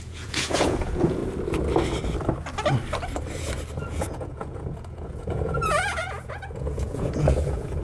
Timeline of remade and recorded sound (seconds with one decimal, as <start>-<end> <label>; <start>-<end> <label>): 0.0-1.2 remade; 1.2-3.9 recorded; 3.9-7.8 remade